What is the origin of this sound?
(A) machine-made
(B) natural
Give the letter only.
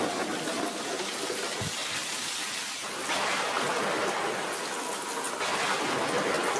B